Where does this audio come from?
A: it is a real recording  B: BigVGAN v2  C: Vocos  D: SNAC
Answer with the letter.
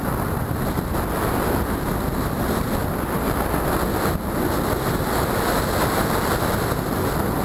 A